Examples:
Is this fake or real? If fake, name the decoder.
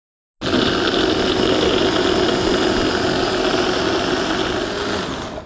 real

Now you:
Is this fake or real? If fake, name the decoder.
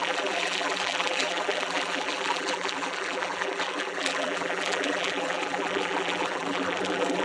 fake, vocoder, BigVGAN v2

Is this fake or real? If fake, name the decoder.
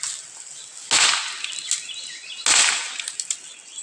real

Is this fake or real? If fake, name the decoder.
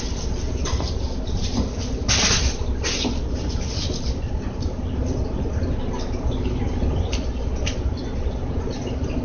real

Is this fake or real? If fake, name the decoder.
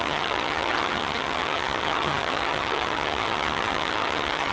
fake, vocoder, HiFi-GAN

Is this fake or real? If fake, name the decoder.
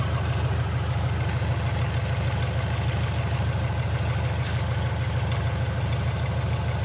real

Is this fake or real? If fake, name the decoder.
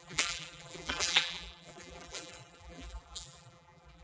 fake, vocoder, BigVGAN v2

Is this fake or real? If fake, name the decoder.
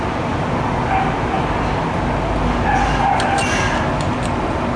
real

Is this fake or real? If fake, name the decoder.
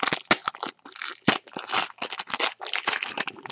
real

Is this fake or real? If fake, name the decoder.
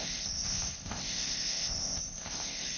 fake, codec, ZipCodec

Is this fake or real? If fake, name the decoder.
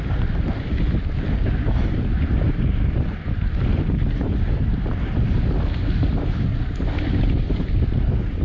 real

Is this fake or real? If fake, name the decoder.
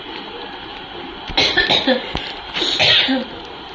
real